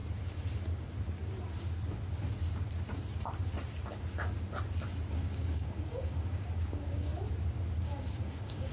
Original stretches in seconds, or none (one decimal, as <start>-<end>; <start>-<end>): 0.0-5.1; 7.1-7.8

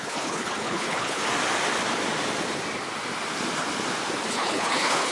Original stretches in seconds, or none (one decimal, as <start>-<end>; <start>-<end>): 1.2-4.3

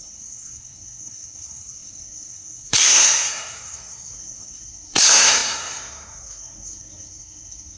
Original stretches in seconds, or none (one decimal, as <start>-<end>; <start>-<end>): none

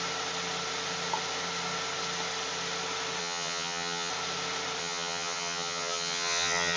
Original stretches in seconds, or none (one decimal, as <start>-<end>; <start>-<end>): 0.0-3.2; 4.1-4.8

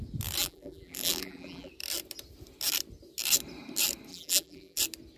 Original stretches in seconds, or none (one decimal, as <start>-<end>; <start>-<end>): 0.0-0.4; 1.7-4.1; 4.8-5.2

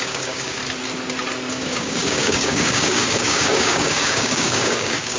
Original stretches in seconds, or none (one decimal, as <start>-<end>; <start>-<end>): 0.6-1.5

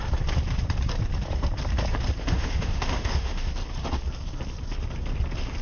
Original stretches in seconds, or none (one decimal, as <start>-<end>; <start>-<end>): 0.0-2.2; 3.5-5.6

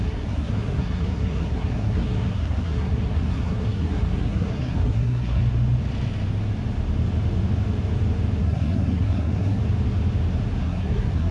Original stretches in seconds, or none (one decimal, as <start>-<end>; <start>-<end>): 5.4-8.4; 9.6-10.6